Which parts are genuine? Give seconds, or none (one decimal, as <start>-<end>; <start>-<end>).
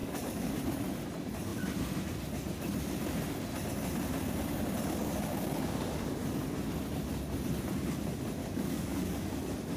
0.6-5.0; 6.2-8.4; 9.4-9.8